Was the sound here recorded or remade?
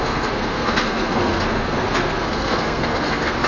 remade